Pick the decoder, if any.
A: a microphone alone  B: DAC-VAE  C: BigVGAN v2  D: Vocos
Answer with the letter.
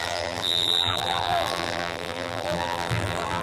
C